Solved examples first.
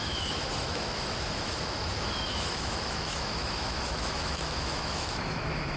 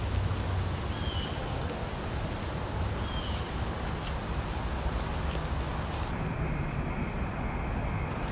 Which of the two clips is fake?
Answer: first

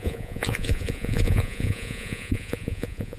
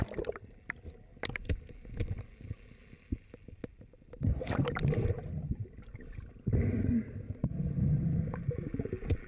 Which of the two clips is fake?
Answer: first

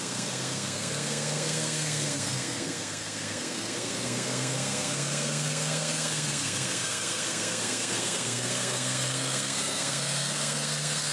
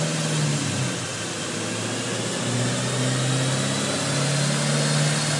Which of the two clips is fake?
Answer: first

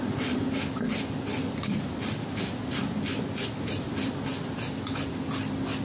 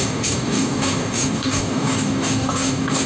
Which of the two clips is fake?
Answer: second